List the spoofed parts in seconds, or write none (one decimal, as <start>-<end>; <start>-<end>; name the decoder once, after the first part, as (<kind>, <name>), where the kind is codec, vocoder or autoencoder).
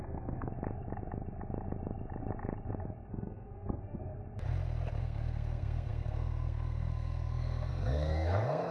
0.0-0.5 (codec, SNAC); 3.1-4.1; 5.0-8.7